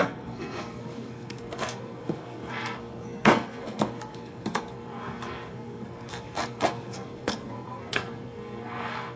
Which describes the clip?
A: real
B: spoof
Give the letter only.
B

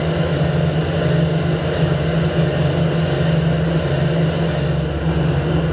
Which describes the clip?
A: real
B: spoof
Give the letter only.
A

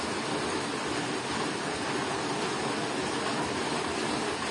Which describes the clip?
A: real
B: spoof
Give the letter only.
A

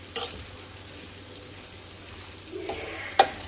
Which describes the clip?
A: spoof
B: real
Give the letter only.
B